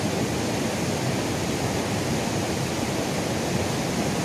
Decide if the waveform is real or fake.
real